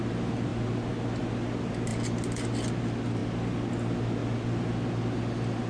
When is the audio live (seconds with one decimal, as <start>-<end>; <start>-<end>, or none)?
0.0-5.7